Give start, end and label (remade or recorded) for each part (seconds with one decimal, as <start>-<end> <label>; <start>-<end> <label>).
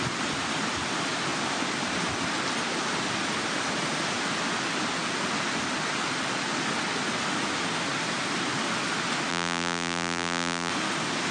0.0-9.3 recorded; 9.3-10.7 remade; 10.7-11.3 recorded